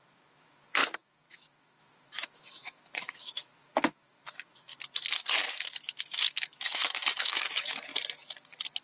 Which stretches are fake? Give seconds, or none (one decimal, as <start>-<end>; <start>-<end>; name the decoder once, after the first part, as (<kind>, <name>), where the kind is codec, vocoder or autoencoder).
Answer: 0.0-4.7 (autoencoder, DAC-VAE); 5.5-7.9

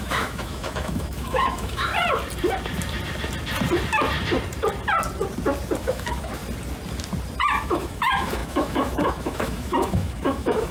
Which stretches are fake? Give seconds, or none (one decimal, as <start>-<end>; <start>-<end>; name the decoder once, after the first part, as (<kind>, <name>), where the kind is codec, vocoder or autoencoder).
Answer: 0.0-1.9 (autoencoder, DAC-VAE); 5.8-6.4; 7.6-10.7

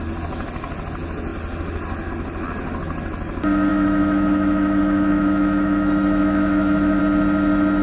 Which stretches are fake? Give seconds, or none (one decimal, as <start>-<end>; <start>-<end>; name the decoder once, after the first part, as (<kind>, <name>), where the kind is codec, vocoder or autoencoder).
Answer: 3.7-7.0 (autoencoder, DAC-VAE)

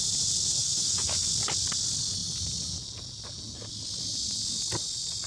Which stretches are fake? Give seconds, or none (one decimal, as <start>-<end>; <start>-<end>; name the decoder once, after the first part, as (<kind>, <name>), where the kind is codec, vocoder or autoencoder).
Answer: 0.6-1.3 (autoencoder, DAC-VAE)

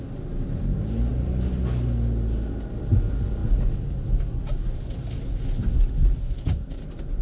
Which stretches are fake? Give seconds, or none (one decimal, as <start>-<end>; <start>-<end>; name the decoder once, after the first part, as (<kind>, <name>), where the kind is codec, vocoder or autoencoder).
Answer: none